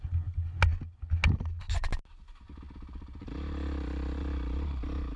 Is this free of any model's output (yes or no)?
yes